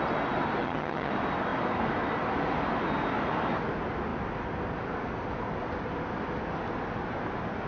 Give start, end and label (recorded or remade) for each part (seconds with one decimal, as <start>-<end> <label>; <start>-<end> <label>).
0.0-0.6 recorded; 0.6-1.1 remade; 1.1-7.7 recorded